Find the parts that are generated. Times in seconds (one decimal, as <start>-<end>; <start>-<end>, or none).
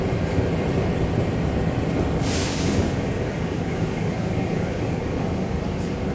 2.4-6.1